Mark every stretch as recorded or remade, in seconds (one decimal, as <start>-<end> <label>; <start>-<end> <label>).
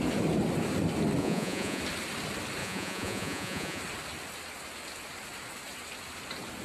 0.0-1.2 recorded; 1.2-1.8 remade; 1.8-2.6 recorded; 2.6-3.8 remade; 3.8-6.6 recorded